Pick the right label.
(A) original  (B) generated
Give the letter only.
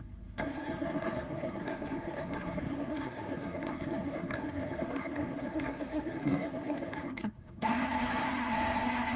B